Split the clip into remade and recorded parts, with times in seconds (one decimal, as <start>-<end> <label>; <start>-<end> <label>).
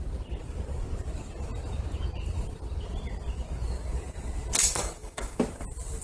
0.0-4.6 recorded; 4.6-5.4 remade; 5.4-6.0 recorded